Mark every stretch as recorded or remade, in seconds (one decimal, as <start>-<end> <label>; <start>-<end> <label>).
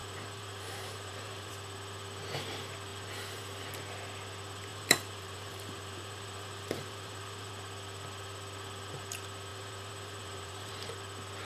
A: 0.0-1.5 remade; 1.5-4.7 recorded; 4.7-7.5 remade; 7.5-9.5 recorded; 9.5-10.7 remade; 10.7-11.4 recorded